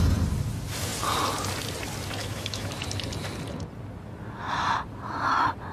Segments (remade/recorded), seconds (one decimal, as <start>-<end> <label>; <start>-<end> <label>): 0.0-2.2 recorded; 2.2-2.7 remade; 2.7-5.7 recorded